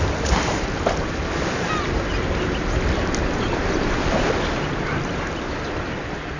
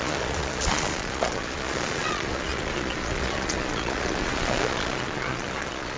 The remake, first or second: second